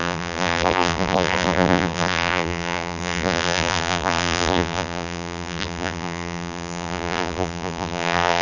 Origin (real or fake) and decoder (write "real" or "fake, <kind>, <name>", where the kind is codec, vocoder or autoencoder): fake, vocoder, BigVGAN v2